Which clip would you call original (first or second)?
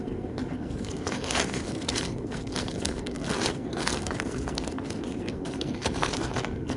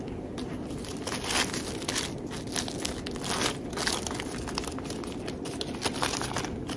second